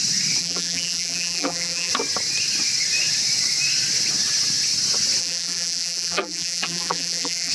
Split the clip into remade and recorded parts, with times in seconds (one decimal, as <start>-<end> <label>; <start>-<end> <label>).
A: 0.0-0.4 recorded; 0.4-1.9 remade; 1.9-5.2 recorded; 5.2-7.5 remade